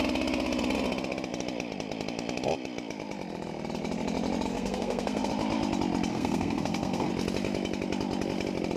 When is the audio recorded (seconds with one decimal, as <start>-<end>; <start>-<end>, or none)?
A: 0.0-4.5; 5.3-6.1; 7.1-8.8

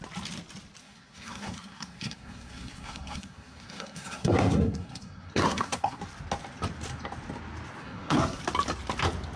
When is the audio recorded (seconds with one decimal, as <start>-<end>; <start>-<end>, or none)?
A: 0.0-0.8; 6.0-7.8; 8.4-9.4

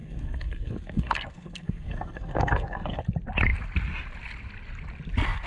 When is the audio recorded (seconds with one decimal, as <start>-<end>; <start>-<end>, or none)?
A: 3.0-5.5

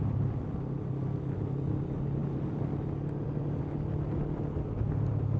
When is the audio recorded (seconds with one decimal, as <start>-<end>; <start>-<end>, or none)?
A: 0.0-5.4

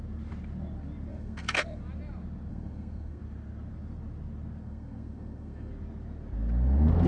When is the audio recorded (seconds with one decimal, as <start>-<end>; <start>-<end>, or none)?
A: 0.0-1.1; 1.8-2.5; 3.2-4.6; 5.7-7.1

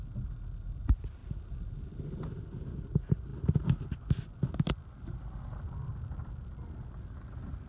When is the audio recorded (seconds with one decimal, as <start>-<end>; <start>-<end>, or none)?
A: 0.0-7.7